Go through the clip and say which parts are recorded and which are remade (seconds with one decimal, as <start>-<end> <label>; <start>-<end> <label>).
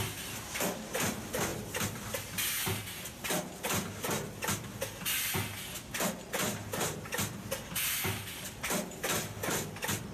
0.0-10.1 recorded